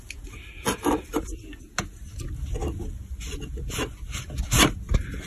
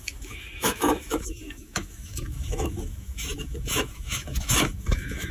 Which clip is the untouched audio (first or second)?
first